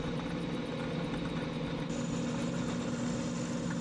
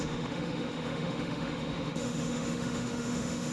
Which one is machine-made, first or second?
second